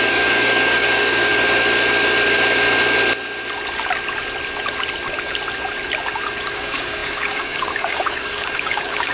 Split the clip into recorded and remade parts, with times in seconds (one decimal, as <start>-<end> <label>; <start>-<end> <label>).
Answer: 0.0-1.3 remade; 1.3-6.5 recorded; 6.5-9.1 remade